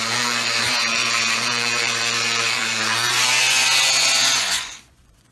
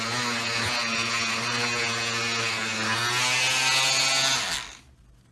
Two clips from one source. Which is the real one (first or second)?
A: second